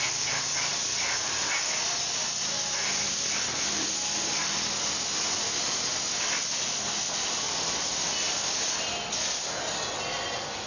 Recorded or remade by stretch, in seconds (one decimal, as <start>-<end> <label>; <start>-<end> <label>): 0.0-10.7 recorded